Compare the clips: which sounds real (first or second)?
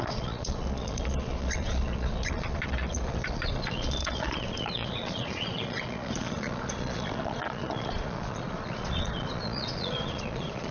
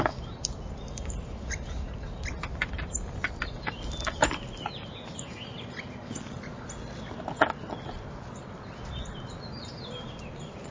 second